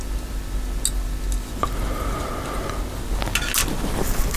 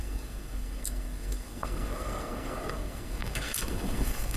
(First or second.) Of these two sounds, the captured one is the first